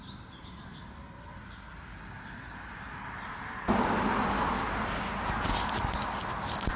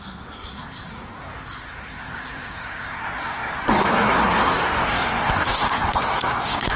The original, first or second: first